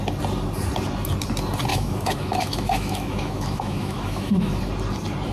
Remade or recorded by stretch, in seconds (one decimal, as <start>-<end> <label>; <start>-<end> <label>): 0.0-1.7 recorded; 1.7-4.6 remade; 4.6-5.3 recorded